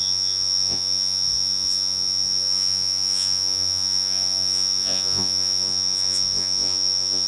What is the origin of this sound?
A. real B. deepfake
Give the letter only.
B